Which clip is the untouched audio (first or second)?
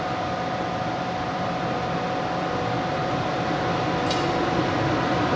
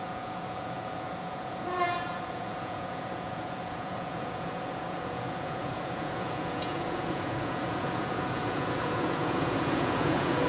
first